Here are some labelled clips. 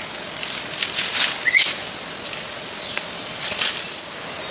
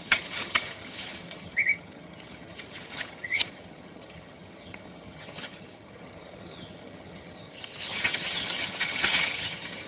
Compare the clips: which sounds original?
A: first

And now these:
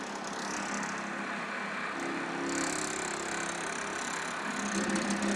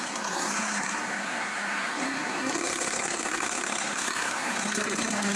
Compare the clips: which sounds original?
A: first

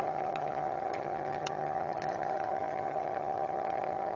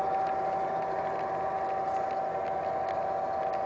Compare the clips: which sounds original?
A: second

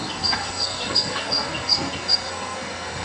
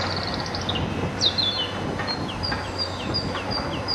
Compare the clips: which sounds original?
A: second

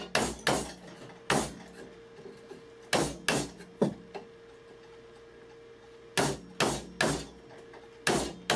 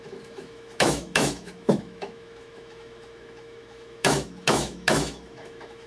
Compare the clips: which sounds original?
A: first